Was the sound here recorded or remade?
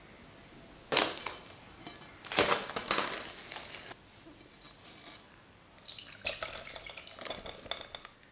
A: recorded